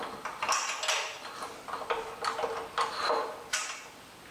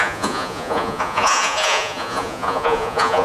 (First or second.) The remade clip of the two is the second